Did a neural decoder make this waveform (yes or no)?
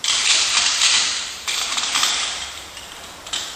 yes